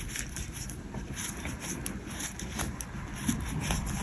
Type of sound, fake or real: real